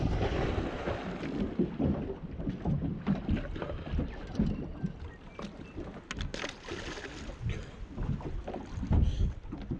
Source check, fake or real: real